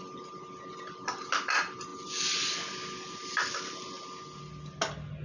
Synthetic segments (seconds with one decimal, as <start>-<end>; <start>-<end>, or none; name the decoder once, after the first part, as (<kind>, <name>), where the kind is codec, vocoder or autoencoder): none